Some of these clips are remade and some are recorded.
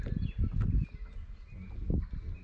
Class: recorded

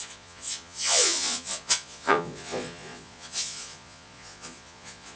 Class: remade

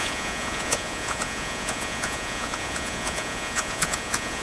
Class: remade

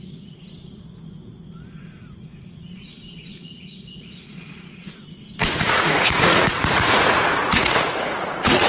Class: remade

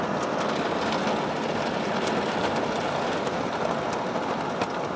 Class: recorded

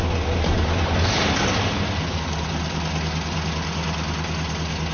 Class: recorded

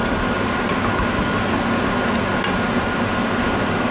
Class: recorded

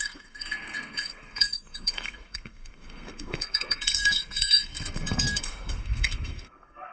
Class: remade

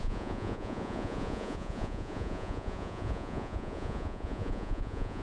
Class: remade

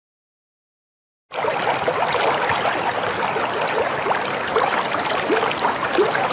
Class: recorded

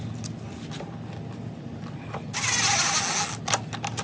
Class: recorded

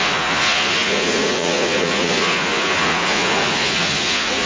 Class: remade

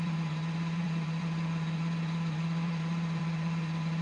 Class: remade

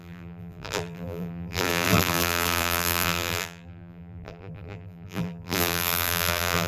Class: remade